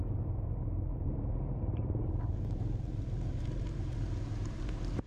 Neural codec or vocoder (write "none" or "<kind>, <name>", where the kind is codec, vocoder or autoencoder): vocoder, BigVGAN v2